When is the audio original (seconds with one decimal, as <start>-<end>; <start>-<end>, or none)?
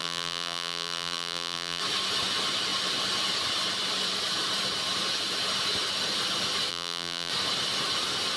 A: 1.8-6.7; 7.3-8.4